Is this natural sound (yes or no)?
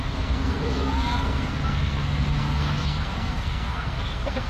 no